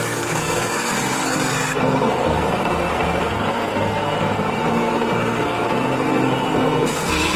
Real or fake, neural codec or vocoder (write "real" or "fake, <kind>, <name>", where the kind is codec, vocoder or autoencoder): fake, codec, SNAC